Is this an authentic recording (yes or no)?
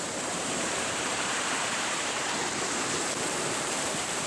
no